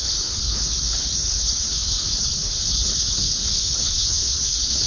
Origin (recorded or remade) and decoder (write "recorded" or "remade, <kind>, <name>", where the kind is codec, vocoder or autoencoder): remade, codec, HILCodec